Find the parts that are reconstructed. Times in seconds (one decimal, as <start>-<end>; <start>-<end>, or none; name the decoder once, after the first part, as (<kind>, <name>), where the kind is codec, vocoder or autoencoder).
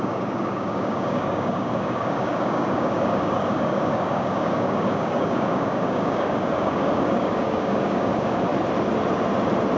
0.0-8.5 (codec, DAC)